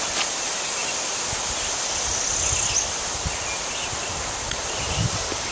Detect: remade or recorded recorded